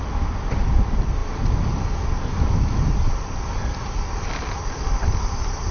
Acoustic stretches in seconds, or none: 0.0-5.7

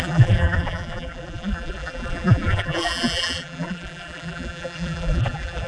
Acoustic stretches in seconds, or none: none